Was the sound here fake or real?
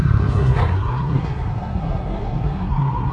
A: fake